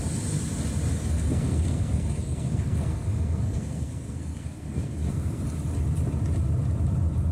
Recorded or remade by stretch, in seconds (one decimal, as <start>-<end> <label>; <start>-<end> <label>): 0.0-1.0 recorded; 1.0-5.4 remade; 5.4-7.3 recorded

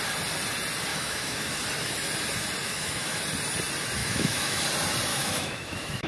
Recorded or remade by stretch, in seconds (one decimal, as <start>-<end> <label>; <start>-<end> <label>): 0.0-0.9 recorded; 0.9-1.6 remade; 1.6-2.6 recorded; 2.6-3.2 remade; 3.2-4.0 recorded; 4.0-4.6 remade; 4.6-5.1 recorded; 5.1-6.1 remade